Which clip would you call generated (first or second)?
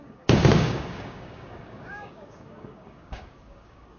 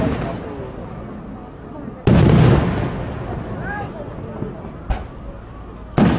first